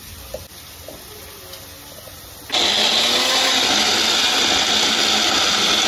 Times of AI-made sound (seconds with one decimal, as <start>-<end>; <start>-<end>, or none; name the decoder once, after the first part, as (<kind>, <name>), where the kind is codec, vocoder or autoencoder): 3.5-5.9 (vocoder, BigVGAN v2)